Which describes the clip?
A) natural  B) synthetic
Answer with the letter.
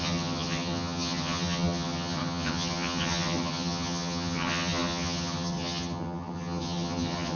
B